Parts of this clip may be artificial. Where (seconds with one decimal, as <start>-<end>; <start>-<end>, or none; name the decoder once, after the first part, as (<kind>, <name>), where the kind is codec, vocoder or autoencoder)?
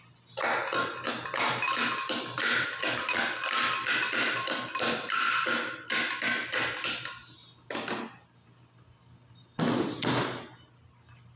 none